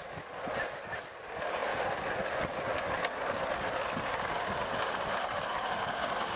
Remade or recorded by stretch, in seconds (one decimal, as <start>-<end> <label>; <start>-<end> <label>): 0.0-6.4 recorded